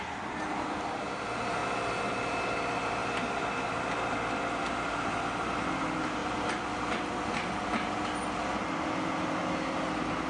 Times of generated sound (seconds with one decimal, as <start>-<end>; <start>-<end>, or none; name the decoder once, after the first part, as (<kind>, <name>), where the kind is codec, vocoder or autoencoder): none